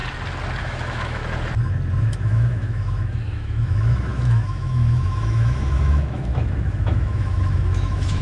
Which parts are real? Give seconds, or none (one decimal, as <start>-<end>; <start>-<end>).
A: 0.0-0.6; 1.2-2.0